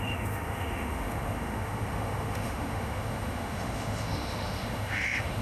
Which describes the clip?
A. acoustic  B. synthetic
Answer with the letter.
B